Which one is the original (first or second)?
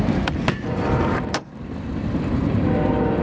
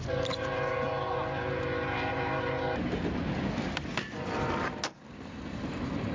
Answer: second